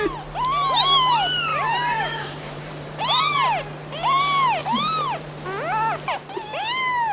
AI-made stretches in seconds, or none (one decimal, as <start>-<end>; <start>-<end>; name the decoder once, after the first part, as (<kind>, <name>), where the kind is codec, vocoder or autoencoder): 1.5-3.2 (vocoder, BigVGAN v2); 4.6-5.3